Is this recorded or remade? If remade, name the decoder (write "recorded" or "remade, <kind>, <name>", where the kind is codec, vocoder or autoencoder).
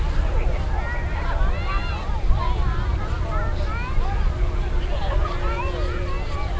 recorded